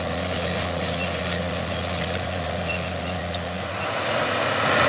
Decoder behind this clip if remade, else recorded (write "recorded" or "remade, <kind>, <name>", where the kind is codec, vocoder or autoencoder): remade, vocoder, Vocos